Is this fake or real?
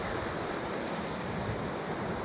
real